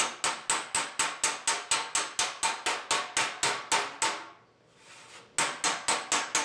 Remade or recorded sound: recorded